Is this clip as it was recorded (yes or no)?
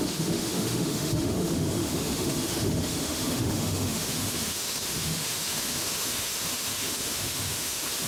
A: no